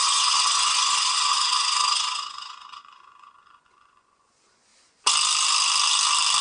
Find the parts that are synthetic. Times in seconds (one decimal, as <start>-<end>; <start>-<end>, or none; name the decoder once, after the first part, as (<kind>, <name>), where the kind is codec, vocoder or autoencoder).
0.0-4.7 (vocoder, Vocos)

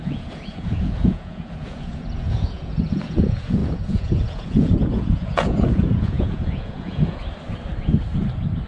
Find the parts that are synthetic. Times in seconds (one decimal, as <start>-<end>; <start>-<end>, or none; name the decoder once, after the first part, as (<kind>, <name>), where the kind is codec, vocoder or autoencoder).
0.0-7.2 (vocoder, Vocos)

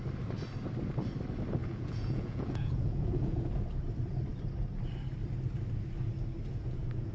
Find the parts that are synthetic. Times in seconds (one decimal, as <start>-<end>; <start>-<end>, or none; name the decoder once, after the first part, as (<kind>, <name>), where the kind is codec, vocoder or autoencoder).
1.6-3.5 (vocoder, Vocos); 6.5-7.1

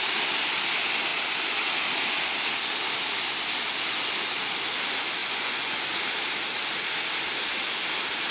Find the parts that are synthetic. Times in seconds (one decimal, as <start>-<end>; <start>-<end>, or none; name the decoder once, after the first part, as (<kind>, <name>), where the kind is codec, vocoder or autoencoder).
5.2-5.8 (vocoder, Vocos)

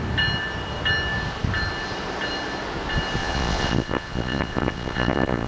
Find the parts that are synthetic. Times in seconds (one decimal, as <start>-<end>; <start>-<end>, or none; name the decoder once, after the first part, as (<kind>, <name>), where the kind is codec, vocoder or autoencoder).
3.2-5.5 (vocoder, Vocos)